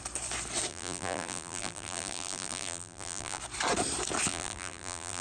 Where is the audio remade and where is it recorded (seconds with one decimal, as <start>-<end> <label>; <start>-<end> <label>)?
0.0-0.7 recorded; 0.7-3.4 remade; 3.4-4.3 recorded; 4.3-5.2 remade